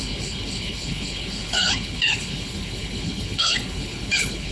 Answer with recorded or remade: remade